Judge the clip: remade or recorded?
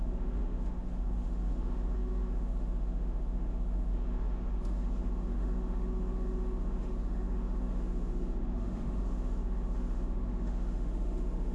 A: remade